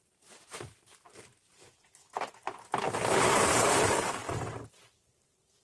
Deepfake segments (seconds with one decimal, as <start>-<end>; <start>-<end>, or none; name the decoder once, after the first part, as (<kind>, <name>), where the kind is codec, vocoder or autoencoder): 0.0-2.0 (vocoder, BigVGAN v2); 3.8-4.2; 5.1-5.6